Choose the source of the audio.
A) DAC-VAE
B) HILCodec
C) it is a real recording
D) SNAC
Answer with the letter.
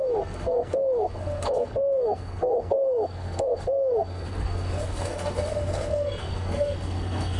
D